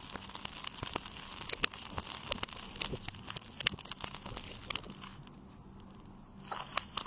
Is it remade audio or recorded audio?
recorded